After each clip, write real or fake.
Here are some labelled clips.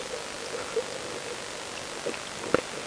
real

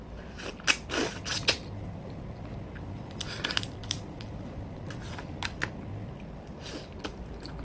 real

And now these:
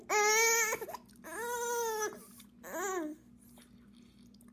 real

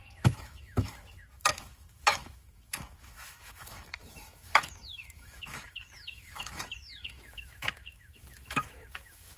fake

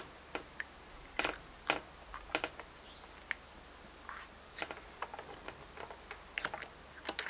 real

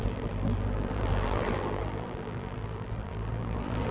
fake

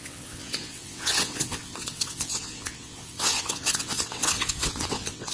fake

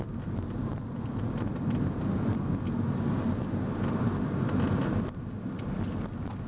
real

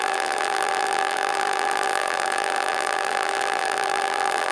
fake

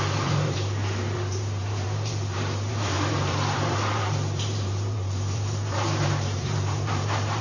fake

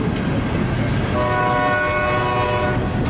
real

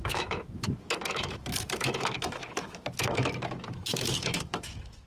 fake